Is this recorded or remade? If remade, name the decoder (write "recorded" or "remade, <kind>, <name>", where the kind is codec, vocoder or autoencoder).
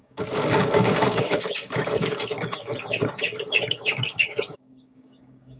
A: remade, codec, DAC